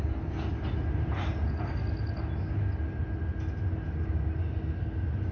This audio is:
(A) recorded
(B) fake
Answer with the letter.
A